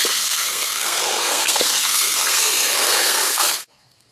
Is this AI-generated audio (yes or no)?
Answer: yes